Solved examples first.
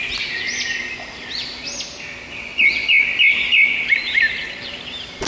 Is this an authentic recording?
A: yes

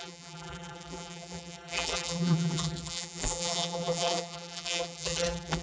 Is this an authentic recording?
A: no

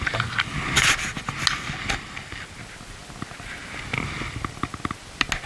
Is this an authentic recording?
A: yes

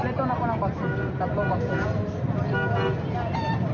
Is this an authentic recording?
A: yes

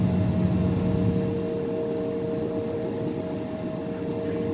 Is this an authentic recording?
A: yes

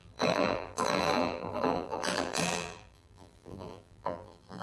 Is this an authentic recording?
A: no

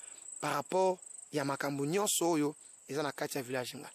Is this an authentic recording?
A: yes